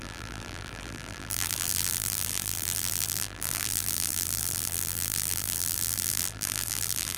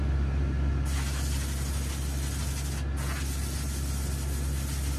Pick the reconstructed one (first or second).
first